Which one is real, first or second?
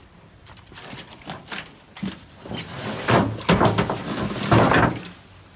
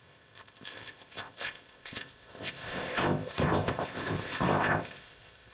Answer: first